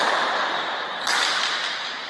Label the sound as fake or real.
fake